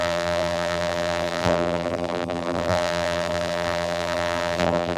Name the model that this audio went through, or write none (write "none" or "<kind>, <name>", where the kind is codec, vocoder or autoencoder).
vocoder, BigVGAN v2